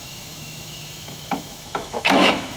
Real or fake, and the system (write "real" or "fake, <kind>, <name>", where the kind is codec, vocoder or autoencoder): fake, autoencoder, DAC-VAE